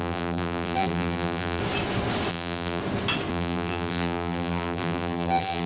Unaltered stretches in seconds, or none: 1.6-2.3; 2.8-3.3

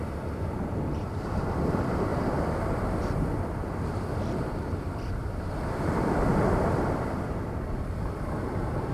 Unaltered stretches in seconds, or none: 2.1-3.1

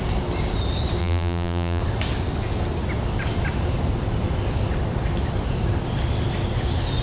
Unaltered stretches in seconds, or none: 0.0-1.0; 1.8-7.0